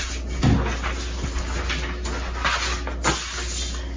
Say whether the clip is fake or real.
real